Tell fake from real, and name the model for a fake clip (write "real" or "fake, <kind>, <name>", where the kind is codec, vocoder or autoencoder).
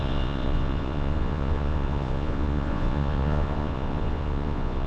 fake, vocoder, Vocos